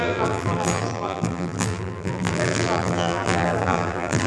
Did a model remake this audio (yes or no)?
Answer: yes